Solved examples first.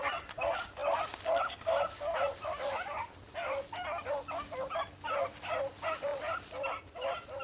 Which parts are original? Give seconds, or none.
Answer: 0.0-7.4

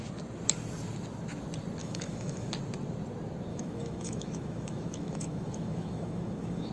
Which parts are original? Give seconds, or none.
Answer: 0.0-1.8; 2.5-3.5

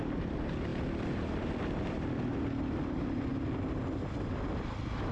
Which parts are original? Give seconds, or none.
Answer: 0.0-5.1

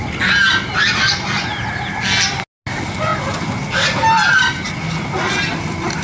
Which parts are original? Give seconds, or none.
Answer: 0.0-6.0

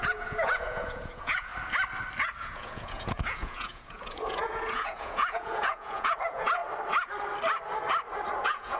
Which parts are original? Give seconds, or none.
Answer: 1.5-2.4; 6.6-8.4